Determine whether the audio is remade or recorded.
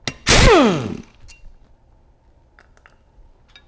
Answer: recorded